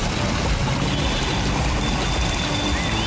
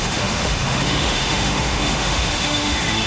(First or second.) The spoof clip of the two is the second